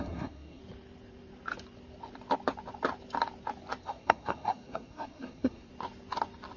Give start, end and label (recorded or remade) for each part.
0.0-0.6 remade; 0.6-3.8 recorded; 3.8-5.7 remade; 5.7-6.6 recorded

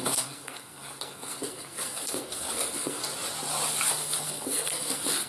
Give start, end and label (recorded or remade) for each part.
0.0-3.0 remade; 3.0-3.9 recorded; 3.9-5.3 remade

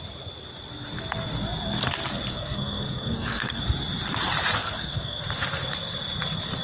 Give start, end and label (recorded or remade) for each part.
0.0-2.3 recorded; 2.3-3.6 remade; 3.6-4.6 recorded; 4.6-5.2 remade; 5.2-6.6 recorded

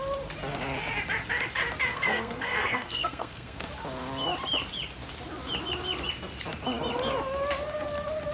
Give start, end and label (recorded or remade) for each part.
0.0-1.9 recorded; 1.9-3.7 remade; 3.7-8.3 recorded

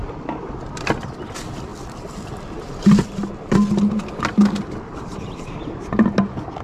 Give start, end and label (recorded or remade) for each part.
0.0-6.6 recorded

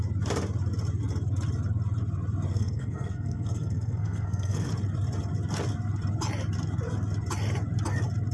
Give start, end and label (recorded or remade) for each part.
0.0-2.5 recorded; 2.5-4.7 remade; 4.7-8.3 recorded